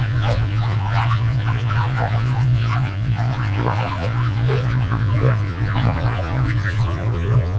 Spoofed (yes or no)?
yes